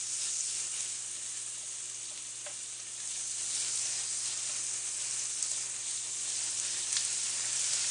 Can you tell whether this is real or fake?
real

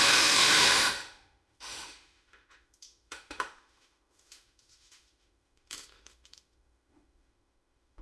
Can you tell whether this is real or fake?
fake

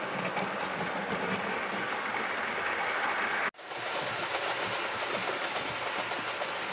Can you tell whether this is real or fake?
real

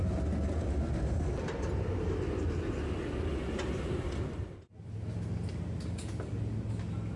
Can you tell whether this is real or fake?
real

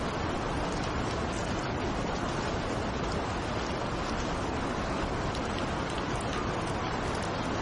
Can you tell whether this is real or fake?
real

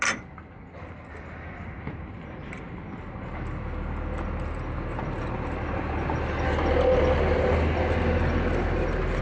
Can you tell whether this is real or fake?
real